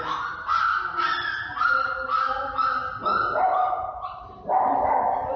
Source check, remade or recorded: recorded